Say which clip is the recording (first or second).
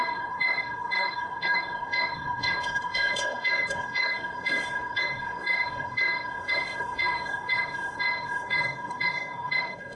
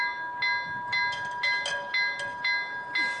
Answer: second